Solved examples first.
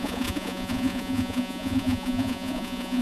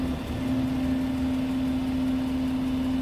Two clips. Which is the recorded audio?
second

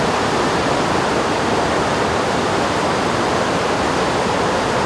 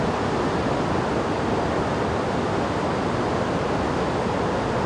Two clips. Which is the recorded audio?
second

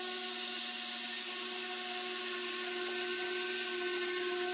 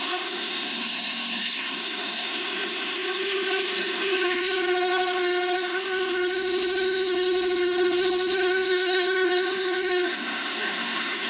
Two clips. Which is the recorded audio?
first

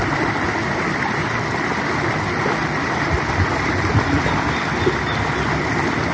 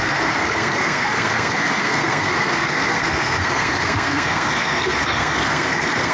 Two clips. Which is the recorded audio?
first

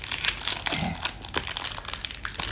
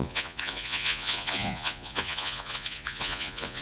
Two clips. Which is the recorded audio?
first